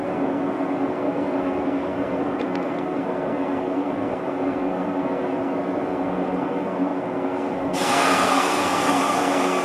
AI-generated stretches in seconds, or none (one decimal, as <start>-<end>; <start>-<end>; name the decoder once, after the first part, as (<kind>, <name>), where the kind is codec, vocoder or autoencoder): 0.0-9.6 (codec, SNAC)